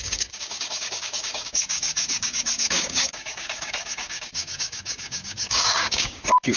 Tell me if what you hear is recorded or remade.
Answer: remade